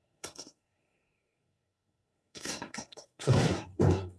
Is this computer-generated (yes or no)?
yes